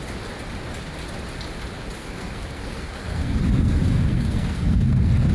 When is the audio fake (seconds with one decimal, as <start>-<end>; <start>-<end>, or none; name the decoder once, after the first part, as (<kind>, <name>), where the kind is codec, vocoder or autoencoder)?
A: 2.0-5.3 (codec, SNAC)